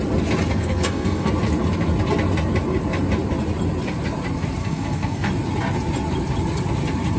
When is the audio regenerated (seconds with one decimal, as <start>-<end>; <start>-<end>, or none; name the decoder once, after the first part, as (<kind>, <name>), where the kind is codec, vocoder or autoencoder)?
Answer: 0.5-1.3 (codec, SNAC); 4.6-5.3